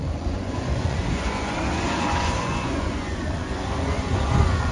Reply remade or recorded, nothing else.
remade